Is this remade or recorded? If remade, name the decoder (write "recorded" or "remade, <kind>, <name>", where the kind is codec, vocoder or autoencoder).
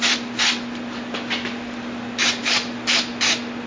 recorded